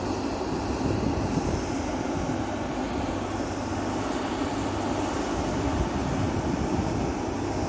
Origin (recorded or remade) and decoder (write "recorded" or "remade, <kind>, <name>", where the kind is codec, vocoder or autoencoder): recorded